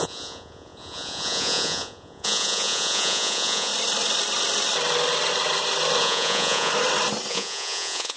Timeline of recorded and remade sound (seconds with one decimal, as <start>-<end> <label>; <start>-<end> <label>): 0.0-3.7 remade; 3.7-6.0 recorded; 6.0-6.7 remade; 6.7-7.3 recorded; 7.3-8.2 remade